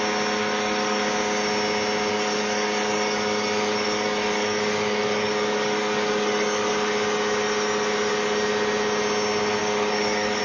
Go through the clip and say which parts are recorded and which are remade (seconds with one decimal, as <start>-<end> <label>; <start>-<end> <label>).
0.0-0.4 recorded; 0.4-1.0 remade; 1.0-2.1 recorded; 2.1-6.7 remade; 6.7-9.6 recorded; 9.6-10.4 remade